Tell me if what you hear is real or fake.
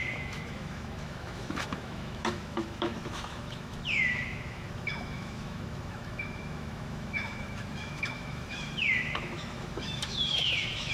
fake